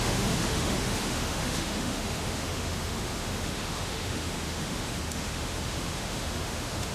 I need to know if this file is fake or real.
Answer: fake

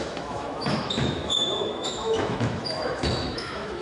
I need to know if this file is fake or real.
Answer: fake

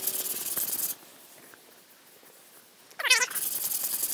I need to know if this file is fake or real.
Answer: real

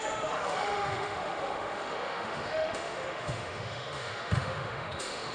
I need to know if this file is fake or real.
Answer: fake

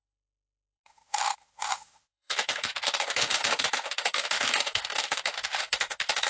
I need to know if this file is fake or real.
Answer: fake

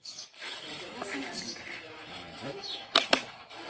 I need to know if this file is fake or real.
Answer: fake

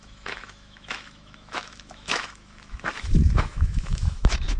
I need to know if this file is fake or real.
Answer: fake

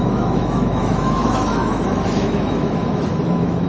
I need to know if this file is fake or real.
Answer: fake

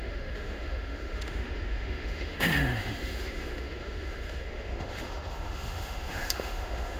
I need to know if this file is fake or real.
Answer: fake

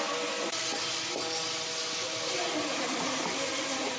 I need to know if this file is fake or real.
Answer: real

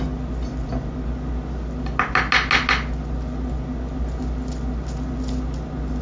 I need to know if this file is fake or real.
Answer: real